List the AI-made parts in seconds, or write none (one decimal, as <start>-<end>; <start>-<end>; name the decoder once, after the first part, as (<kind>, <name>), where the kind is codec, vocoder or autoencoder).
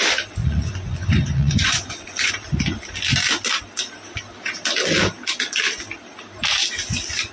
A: 0.4-2.3 (vocoder, Vocos)